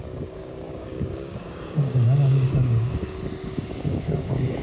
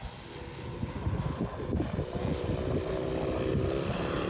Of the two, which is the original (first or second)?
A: second